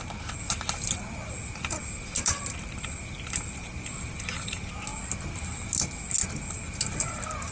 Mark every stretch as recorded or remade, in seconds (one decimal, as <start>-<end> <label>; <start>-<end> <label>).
0.0-7.5 recorded